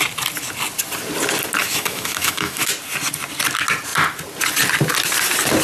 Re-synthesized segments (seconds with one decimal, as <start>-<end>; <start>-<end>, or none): 1.6-2.7